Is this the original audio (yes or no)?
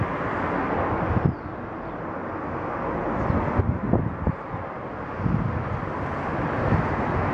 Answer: yes